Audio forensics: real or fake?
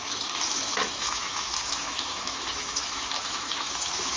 fake